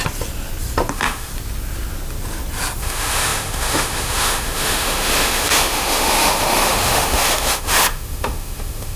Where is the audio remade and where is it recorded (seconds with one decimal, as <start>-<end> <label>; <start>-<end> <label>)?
0.0-0.9 recorded; 0.9-1.3 remade; 1.3-2.8 recorded; 2.8-9.0 remade